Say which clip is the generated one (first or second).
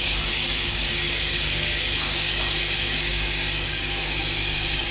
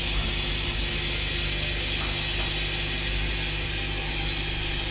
first